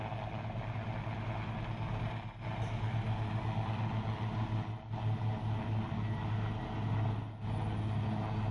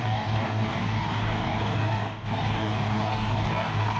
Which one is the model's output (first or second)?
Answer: second